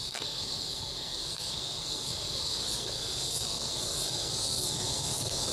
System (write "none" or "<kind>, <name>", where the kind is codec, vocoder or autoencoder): codec, SNAC